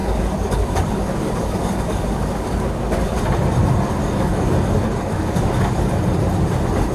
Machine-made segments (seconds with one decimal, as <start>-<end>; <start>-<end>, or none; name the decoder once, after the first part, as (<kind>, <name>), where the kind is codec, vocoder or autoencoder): 0.0-3.2 (codec, DAC); 4.0-5.9